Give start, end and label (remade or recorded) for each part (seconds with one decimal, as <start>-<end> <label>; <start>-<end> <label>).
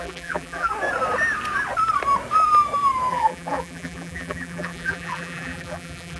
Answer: 0.0-0.7 remade; 0.7-3.1 recorded; 3.1-6.2 remade